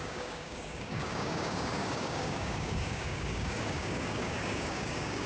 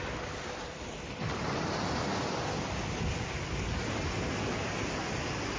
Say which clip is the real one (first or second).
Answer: second